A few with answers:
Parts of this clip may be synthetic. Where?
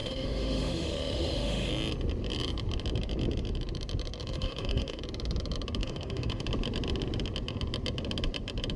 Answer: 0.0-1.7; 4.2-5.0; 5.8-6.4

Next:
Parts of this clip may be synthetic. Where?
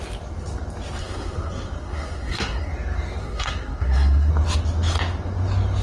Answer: 1.0-2.7; 3.2-4.3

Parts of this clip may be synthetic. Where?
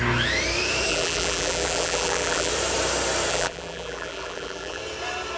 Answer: 0.9-2.5; 3.3-4.8